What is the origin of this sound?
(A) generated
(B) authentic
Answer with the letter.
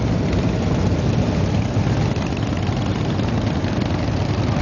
B